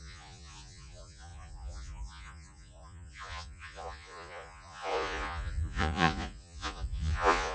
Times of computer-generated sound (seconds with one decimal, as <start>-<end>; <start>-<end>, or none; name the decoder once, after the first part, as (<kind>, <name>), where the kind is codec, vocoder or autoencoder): 0.0-7.5 (vocoder, Vocos)